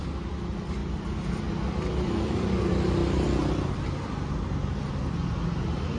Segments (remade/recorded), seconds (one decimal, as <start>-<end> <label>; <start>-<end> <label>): 0.0-6.0 recorded